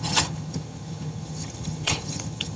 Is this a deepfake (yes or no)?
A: yes